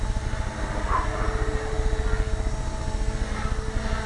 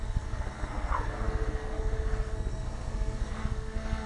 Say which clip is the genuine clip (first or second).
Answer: first